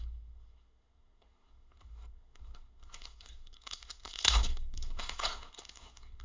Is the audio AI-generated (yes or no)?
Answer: yes